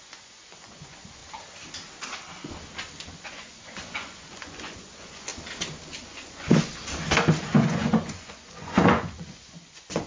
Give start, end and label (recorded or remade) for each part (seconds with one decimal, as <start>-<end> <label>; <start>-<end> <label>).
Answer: 0.0-1.2 remade; 1.2-3.1 recorded; 3.1-5.3 remade; 5.3-6.0 recorded; 6.0-6.7 remade; 6.7-7.4 recorded; 7.4-10.1 remade